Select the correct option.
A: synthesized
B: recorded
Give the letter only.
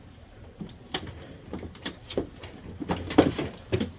B